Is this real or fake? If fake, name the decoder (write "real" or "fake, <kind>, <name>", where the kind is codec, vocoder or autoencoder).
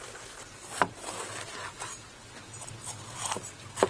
real